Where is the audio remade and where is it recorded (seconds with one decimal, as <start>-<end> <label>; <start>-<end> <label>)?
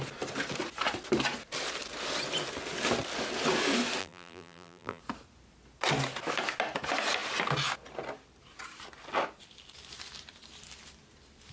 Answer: 0.0-4.0 recorded; 4.0-5.0 remade; 5.0-11.5 recorded